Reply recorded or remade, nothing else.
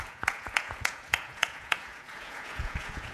remade